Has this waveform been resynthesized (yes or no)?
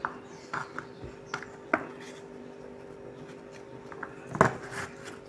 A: no